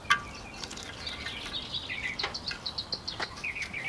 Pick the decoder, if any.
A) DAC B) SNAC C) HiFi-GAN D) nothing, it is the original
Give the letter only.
D